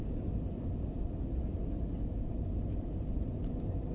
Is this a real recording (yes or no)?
yes